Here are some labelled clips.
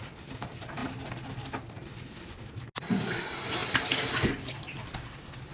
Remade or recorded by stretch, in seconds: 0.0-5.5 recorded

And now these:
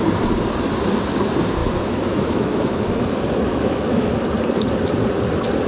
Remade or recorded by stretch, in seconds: 0.0-1.6 recorded; 1.6-3.0 remade; 3.0-3.5 recorded; 3.5-4.2 remade; 4.2-5.7 recorded

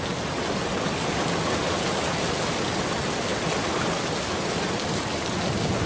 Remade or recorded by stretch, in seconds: 0.0-5.9 recorded

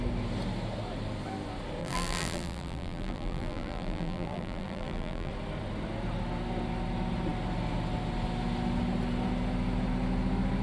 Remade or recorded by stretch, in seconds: 0.0-1.8 recorded; 1.8-5.3 remade; 5.3-10.6 recorded

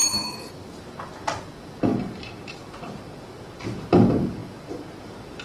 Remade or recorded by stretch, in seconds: 0.0-0.5 remade; 0.5-5.4 recorded